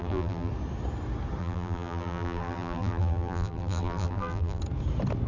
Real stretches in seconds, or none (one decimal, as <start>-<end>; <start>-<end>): 0.5-1.4; 4.6-5.3